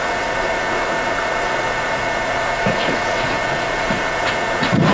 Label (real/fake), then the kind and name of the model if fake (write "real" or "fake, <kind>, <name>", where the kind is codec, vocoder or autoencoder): fake, vocoder, Vocos